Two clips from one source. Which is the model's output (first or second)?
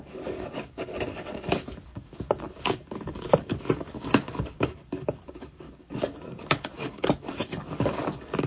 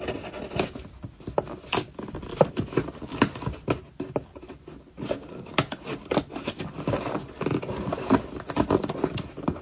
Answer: first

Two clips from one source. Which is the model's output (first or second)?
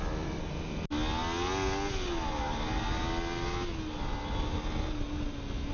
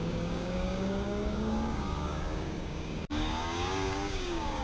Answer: second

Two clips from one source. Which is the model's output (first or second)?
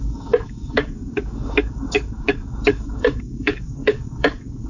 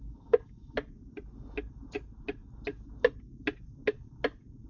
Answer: first